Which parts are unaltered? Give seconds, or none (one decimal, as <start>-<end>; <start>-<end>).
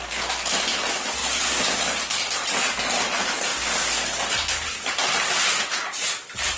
0.0-6.6